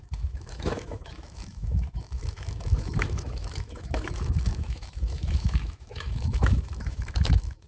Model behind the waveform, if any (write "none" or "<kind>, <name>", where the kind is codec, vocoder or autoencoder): autoencoder, DAC-VAE